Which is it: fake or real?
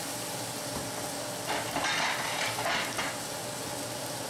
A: real